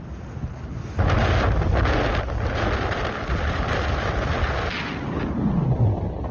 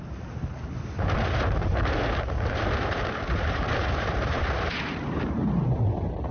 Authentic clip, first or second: first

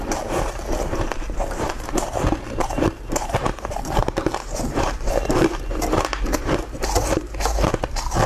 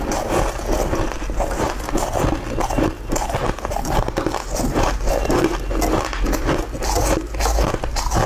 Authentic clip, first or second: second